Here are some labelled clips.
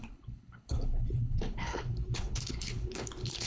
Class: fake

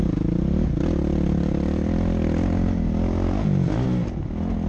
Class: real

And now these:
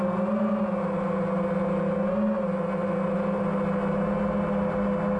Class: real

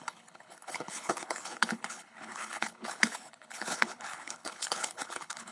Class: fake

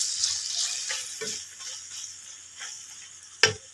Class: real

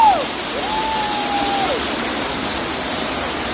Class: real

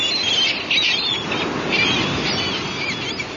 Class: real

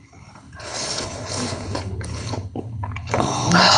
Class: fake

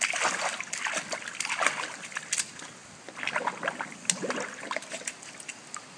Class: real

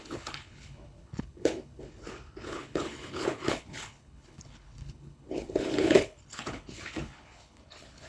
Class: fake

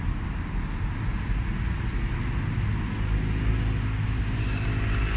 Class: real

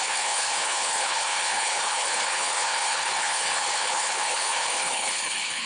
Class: fake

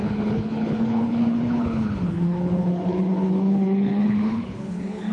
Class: fake